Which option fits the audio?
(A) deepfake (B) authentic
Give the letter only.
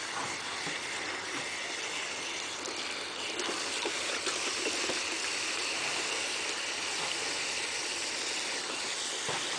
B